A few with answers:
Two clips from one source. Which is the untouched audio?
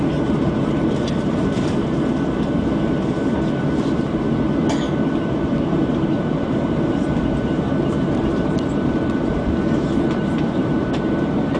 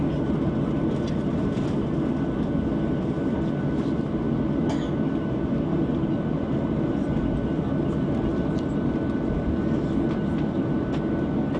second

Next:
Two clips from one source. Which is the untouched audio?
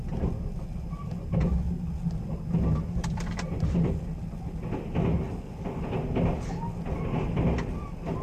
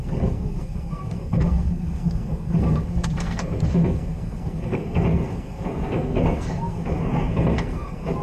first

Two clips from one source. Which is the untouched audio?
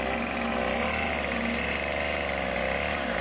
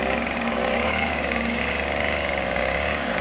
first